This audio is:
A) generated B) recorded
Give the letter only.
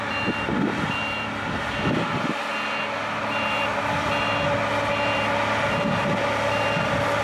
B